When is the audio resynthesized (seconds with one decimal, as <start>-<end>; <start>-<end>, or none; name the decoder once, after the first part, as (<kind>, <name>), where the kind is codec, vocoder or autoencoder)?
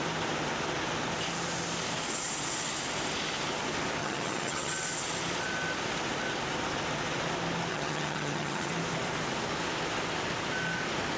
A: 4.0-4.8 (vocoder, HiFi-GAN); 7.7-8.7